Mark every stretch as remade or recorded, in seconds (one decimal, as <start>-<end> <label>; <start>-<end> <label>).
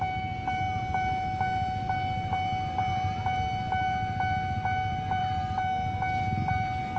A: 0.0-7.0 recorded